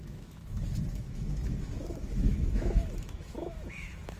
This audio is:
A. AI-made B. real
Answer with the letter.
A